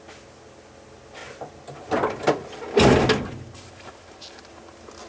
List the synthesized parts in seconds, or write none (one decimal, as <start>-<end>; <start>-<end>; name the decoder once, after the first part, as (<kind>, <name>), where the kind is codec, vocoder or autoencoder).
none